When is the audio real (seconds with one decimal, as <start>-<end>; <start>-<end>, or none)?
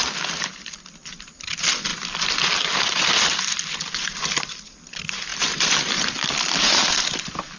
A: 1.9-2.8